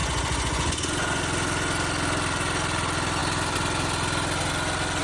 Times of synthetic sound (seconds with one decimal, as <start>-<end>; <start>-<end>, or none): 0.0-1.2